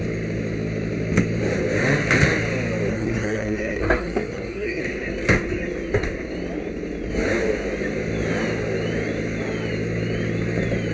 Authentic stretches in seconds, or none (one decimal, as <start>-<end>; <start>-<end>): 0.0-2.9; 4.8-10.9